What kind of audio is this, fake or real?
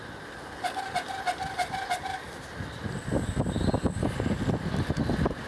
real